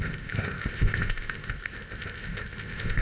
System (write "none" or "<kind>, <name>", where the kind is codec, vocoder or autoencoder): codec, ZipCodec